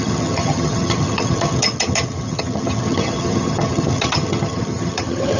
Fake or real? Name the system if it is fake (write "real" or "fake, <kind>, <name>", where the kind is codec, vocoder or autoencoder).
fake, vocoder, HiFi-GAN